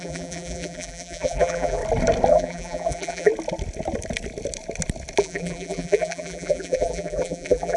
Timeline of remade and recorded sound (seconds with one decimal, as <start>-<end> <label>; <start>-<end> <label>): 0.0-1.8 remade; 1.8-2.3 recorded; 2.3-3.3 remade; 3.3-5.2 recorded; 5.2-7.8 remade